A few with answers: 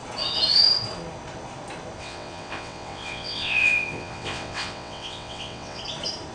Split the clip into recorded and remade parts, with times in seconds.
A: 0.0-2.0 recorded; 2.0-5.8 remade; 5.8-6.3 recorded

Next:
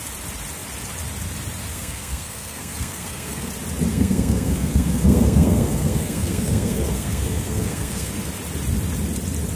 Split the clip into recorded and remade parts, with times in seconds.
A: 0.0-1.7 recorded; 1.7-3.5 remade; 3.5-3.9 recorded; 3.9-8.1 remade; 8.1-9.6 recorded

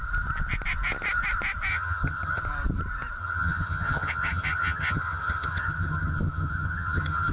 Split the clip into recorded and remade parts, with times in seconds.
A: 0.0-1.7 recorded; 1.7-2.4 remade; 2.4-3.2 recorded; 3.2-7.3 remade

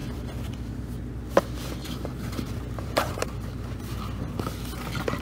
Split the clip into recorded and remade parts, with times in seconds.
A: 0.0-1.8 recorded; 1.8-3.2 remade; 3.2-5.2 recorded

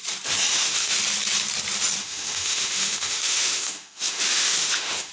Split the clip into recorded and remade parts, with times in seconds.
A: 0.0-0.5 recorded; 0.5-1.0 remade; 1.0-2.0 recorded; 2.0-5.1 remade